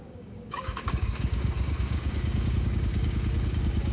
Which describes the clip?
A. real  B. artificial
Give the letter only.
B